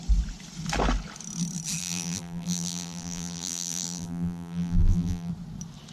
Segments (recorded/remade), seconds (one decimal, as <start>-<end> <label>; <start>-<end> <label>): 0.0-1.8 recorded; 1.8-5.3 remade; 5.3-5.9 recorded